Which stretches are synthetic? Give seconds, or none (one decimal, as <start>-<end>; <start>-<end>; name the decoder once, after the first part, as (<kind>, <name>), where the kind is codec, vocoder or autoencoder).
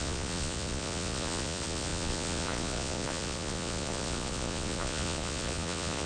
0.0-6.1 (vocoder, Vocos)